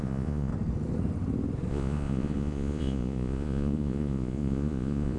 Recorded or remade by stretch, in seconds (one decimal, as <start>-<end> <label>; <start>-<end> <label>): 0.0-0.5 remade; 0.5-1.7 recorded; 1.7-5.2 remade